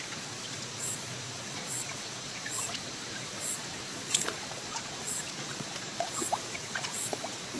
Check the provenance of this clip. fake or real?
fake